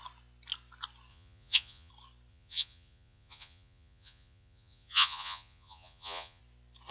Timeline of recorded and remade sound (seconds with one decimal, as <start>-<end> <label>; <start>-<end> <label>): 0.0-1.1 recorded; 1.1-1.9 remade; 1.9-2.3 recorded; 2.3-6.4 remade; 6.4-6.9 recorded